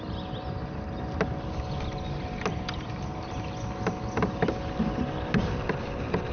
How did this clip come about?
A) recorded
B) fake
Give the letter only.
A